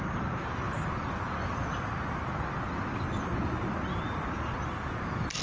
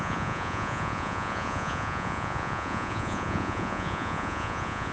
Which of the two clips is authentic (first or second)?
first